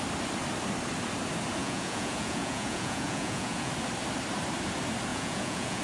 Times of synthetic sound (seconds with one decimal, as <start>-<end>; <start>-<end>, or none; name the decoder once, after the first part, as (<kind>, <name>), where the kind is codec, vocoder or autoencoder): 1.6-3.7 (vocoder, Vocos); 5.1-5.8